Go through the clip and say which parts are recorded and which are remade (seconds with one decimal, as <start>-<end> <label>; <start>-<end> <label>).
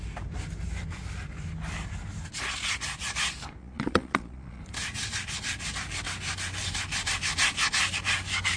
0.0-3.6 recorded; 3.6-4.6 remade; 4.6-8.6 recorded